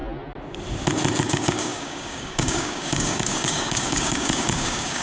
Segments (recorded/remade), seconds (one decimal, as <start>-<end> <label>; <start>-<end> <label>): 0.0-1.2 recorded; 1.2-5.0 remade